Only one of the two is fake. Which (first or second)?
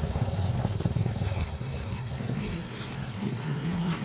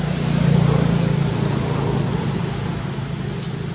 first